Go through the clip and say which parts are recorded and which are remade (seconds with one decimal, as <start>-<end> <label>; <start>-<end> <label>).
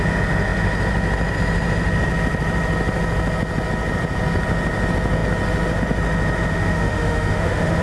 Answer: 0.0-6.5 recorded; 6.5-7.8 remade